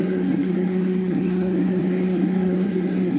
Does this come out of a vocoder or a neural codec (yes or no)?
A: yes